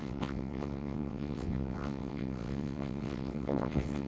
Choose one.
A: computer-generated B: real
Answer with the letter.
A